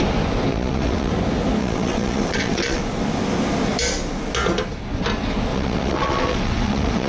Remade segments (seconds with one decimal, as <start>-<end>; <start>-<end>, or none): 0.5-1.1; 1.6-2.8; 5.5-7.1